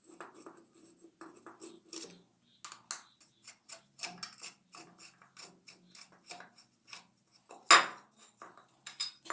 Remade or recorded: recorded